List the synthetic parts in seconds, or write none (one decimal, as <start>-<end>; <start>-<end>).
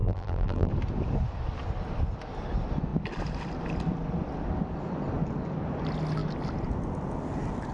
0.0-0.7